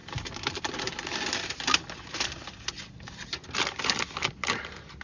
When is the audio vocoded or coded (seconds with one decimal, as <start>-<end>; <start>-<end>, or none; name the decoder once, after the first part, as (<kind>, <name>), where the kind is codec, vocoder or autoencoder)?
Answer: 0.0-1.2 (vocoder, BigVGAN v2)